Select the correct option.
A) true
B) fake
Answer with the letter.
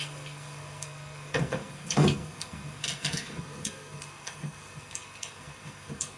B